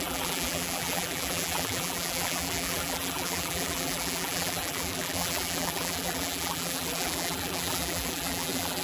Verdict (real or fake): fake